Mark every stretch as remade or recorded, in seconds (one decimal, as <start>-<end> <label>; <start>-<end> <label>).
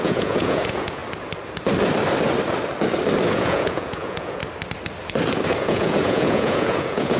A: 0.0-1.0 remade; 1.0-3.3 recorded; 3.3-4.4 remade; 4.4-5.6 recorded; 5.6-7.2 remade